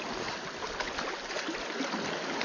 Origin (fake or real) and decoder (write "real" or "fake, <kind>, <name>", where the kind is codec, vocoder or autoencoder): real